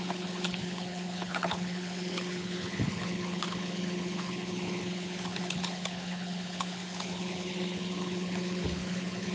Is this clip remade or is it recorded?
remade